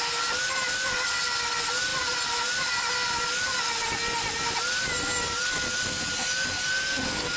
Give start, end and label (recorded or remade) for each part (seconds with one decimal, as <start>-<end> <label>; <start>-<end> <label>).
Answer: 0.0-7.4 recorded

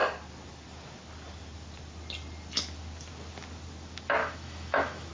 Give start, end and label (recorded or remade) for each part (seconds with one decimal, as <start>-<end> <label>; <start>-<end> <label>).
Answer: 0.0-4.2 recorded; 4.2-5.1 remade

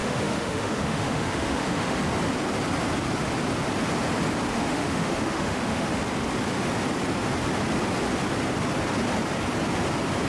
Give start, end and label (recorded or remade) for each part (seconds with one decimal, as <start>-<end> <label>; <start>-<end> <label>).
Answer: 0.0-2.0 remade; 2.0-4.5 recorded; 4.5-6.0 remade; 6.0-10.3 recorded

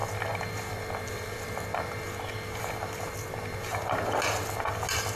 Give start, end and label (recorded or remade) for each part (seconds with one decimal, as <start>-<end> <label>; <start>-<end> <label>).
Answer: 0.0-5.2 recorded

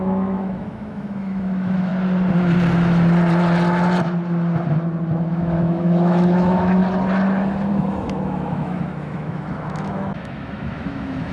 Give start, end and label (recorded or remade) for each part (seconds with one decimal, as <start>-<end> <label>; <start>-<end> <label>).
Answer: 0.0-1.9 remade; 1.9-5.4 recorded; 5.4-6.8 remade; 6.8-7.7 recorded; 7.7-11.3 remade